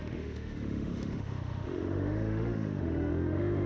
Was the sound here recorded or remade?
remade